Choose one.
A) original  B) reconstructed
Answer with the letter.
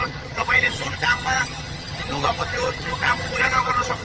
B